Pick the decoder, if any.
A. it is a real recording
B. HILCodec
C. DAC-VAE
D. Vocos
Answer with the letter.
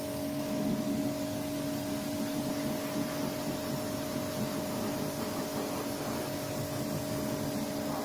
A